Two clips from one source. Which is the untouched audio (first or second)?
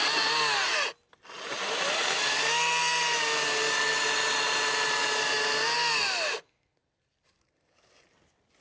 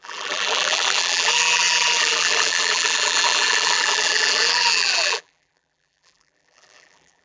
first